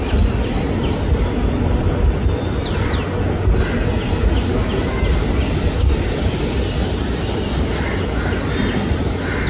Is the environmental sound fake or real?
real